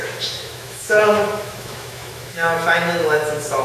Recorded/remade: remade